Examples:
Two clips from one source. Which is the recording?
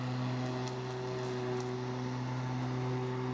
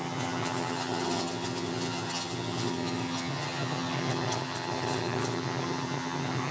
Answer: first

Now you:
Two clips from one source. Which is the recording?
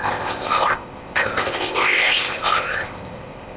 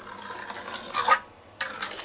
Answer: second